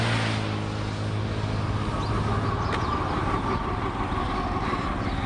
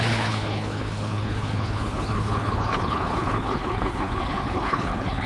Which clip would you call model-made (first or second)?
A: second